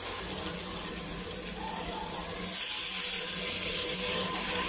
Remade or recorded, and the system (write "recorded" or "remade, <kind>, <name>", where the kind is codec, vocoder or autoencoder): recorded